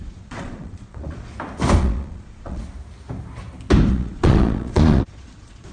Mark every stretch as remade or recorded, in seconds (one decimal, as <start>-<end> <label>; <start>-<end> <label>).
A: 0.0-1.3 remade; 1.3-1.8 recorded; 1.8-2.6 remade; 2.6-3.9 recorded; 3.9-5.7 remade